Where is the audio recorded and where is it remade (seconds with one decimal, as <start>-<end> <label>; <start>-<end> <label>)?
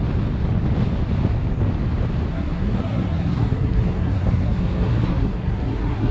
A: 0.0-2.3 recorded; 2.3-6.1 remade